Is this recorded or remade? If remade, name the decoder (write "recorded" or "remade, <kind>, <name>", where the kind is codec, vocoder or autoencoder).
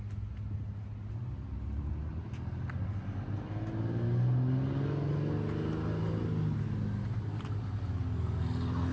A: recorded